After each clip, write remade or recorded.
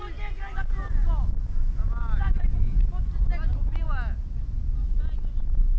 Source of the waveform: recorded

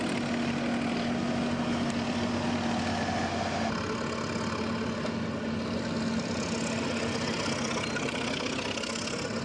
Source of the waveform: recorded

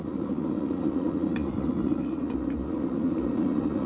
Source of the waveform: remade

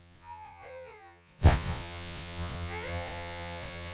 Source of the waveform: remade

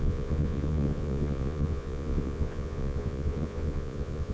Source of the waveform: remade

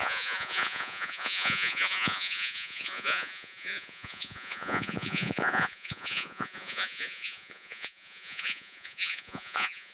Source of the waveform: remade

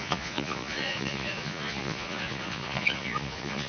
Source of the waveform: remade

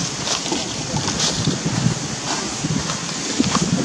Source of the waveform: recorded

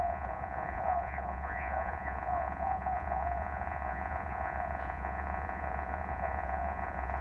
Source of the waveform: remade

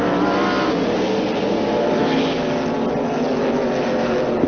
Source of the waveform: recorded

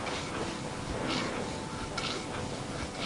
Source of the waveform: recorded